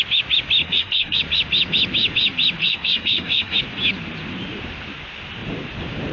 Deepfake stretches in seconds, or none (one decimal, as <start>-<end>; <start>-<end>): 0.6-1.2; 2.6-3.6